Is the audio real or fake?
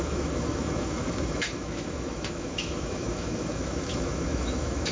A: fake